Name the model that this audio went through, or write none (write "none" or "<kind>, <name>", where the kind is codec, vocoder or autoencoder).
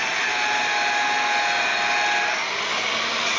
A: none